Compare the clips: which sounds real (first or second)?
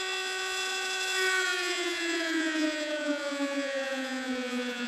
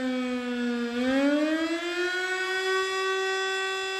second